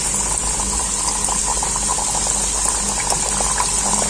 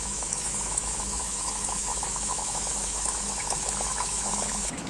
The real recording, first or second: first